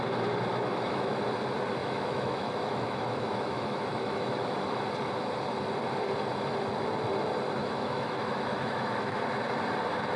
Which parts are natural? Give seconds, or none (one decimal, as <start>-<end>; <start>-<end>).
0.0-0.5; 1.2-1.8; 4.8-7.6; 9.2-10.2